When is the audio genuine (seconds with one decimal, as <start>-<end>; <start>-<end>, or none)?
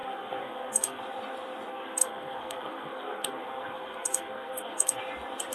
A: 1.0-1.7; 5.0-5.5